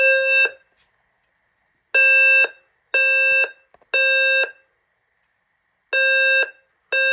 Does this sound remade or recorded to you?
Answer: recorded